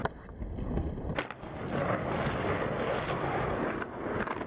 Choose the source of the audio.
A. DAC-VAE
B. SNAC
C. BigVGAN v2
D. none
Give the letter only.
D